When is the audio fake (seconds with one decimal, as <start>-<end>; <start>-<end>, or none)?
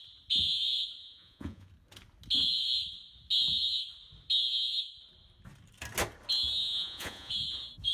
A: 1.0-1.7; 6.6-7.3